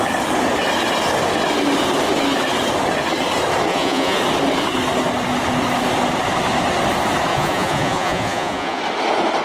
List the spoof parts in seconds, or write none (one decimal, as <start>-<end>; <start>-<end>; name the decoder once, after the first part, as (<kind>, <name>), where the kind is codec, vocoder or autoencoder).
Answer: 3.7-4.2 (vocoder, Vocos); 7.3-8.8